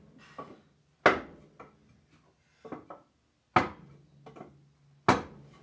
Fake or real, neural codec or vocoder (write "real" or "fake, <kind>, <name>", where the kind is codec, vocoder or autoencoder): real